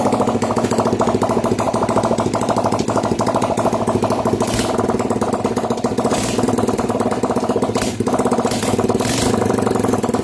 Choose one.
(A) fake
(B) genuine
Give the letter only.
B